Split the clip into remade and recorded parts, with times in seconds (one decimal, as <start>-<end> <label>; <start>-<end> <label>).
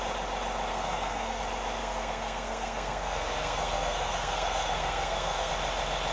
0.0-0.7 recorded; 0.7-1.4 remade; 1.4-1.8 recorded; 1.8-5.5 remade; 5.5-6.1 recorded